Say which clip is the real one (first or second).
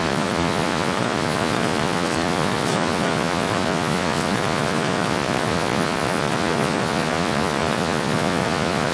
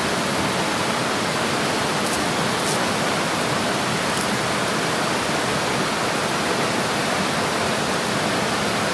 second